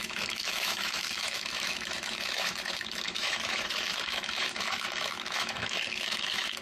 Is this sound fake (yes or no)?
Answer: yes